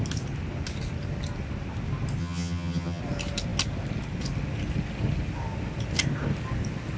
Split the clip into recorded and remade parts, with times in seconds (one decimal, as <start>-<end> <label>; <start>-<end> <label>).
0.0-2.2 recorded; 2.2-3.0 remade; 3.0-7.0 recorded